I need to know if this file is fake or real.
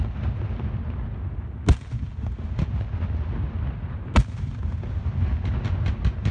real